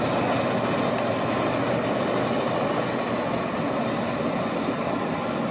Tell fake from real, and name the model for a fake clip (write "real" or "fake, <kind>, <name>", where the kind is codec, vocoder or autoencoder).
real